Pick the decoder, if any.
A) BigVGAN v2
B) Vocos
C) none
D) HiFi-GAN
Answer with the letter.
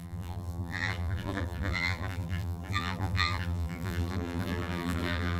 A